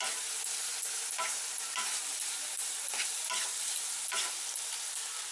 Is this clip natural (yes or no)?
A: yes